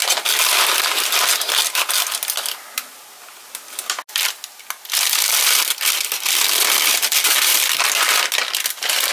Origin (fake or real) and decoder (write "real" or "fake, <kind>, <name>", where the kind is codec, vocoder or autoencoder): real